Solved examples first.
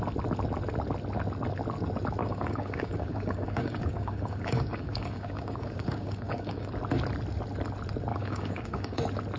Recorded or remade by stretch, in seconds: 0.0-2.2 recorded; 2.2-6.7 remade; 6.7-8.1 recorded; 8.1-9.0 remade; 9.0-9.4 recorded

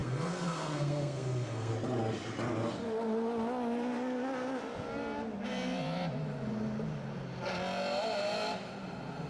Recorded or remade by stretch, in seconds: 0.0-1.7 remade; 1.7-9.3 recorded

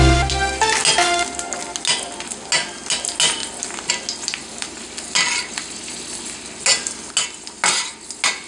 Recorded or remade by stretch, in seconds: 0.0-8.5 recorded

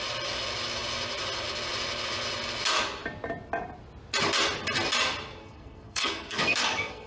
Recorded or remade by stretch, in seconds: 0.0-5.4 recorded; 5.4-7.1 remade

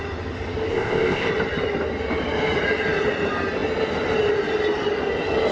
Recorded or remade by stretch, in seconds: 0.0-0.7 recorded; 0.7-1.3 remade; 1.3-5.5 recorded

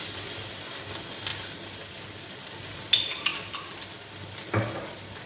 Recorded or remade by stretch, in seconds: 0.0-5.3 recorded